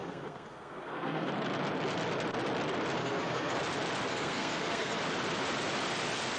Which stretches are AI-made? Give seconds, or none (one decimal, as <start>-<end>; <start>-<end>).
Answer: 0.0-1.3; 3.0-3.6; 4.1-5.0